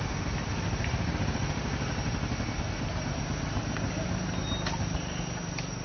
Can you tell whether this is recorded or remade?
recorded